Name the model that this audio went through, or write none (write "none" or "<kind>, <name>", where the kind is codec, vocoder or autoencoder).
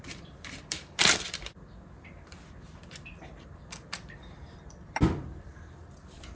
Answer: vocoder, BigVGAN v2